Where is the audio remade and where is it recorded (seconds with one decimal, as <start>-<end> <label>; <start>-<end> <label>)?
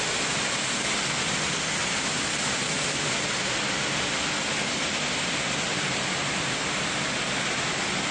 0.0-8.1 recorded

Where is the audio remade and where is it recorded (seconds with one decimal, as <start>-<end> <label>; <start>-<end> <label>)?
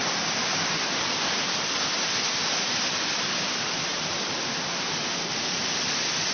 0.0-6.3 recorded